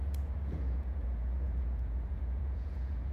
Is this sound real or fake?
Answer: fake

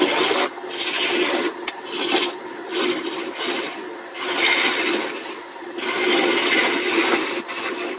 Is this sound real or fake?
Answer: real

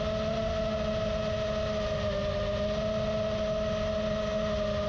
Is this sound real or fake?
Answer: real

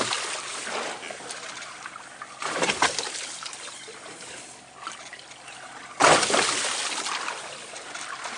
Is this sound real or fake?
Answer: real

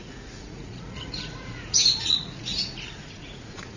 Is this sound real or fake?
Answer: fake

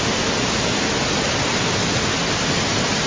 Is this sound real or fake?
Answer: real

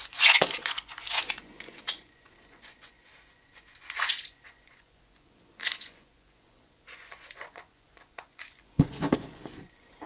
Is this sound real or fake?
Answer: fake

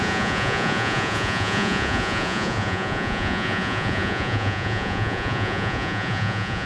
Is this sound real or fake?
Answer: fake